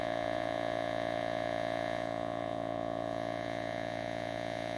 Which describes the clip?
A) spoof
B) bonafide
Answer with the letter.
A